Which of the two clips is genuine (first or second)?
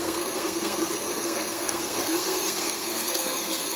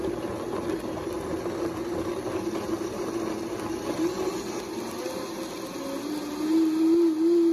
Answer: second